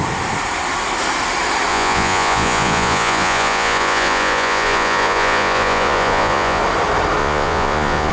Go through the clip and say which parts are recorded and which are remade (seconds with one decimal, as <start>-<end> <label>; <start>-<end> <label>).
0.0-1.7 recorded; 1.7-6.6 remade; 6.6-7.2 recorded; 7.2-8.1 remade